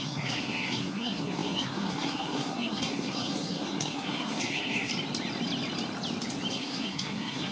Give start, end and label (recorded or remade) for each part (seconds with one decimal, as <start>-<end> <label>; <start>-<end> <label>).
0.0-4.9 remade; 4.9-6.5 recorded; 6.5-7.5 remade